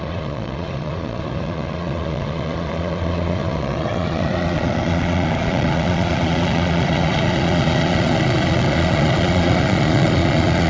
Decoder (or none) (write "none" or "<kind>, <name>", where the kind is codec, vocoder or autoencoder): vocoder, Vocos